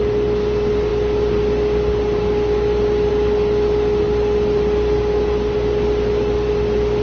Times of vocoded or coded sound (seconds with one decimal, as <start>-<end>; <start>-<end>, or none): none